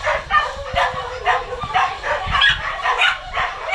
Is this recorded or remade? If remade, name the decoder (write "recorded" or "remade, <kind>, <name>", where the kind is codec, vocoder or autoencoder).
recorded